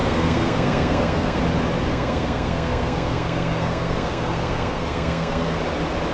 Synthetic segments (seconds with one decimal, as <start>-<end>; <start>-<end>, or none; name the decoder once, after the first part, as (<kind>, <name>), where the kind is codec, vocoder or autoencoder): 0.0-1.4 (codec, SNAC); 1.9-5.6